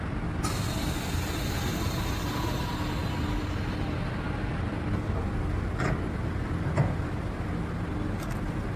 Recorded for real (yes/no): yes